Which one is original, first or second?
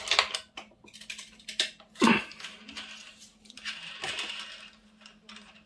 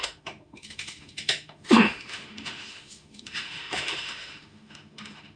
first